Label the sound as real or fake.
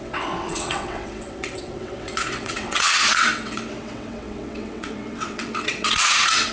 fake